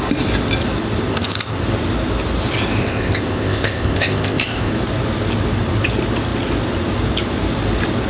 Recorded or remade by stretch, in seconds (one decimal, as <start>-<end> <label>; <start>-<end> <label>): 0.0-1.1 recorded; 1.1-1.6 remade; 1.6-2.8 recorded; 2.8-4.7 remade; 4.7-8.1 recorded